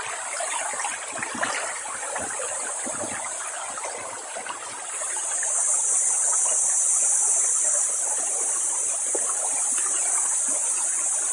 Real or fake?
real